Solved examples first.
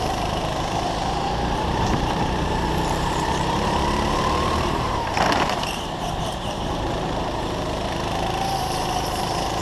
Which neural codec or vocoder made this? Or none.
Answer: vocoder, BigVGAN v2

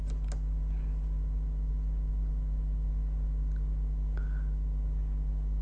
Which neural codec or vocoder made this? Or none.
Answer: none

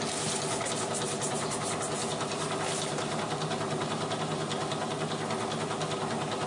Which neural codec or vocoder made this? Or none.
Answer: none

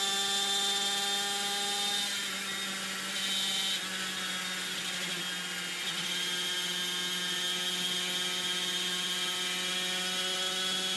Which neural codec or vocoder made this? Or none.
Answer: none